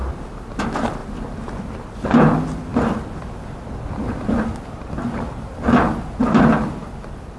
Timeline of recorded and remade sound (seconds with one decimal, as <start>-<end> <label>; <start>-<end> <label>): 0.0-2.7 recorded; 2.7-6.1 remade; 6.1-7.4 recorded